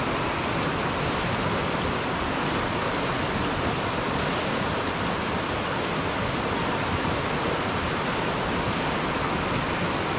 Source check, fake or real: real